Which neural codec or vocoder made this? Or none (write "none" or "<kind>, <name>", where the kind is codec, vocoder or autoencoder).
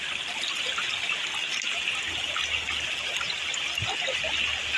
none